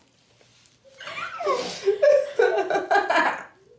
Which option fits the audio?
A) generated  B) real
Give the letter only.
B